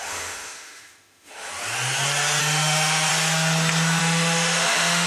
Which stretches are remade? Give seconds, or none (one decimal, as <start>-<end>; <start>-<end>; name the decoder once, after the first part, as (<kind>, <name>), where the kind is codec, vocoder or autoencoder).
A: 0.0-1.5 (autoencoder, DAC-VAE); 2.4-3.1; 4.0-5.1